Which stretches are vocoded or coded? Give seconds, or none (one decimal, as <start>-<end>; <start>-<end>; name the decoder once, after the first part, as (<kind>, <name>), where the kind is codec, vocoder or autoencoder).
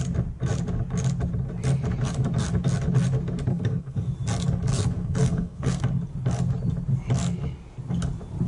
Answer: 3.5-4.1 (codec, SNAC); 4.7-5.8